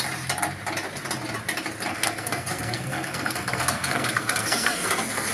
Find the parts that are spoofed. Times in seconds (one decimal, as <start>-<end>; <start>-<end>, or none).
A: 1.9-5.3

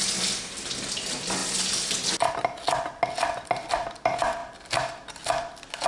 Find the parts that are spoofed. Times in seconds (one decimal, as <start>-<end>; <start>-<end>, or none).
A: none

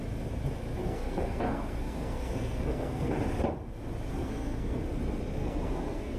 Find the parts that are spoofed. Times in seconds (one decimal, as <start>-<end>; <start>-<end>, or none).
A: 0.8-3.1; 4.1-4.8; 5.4-6.2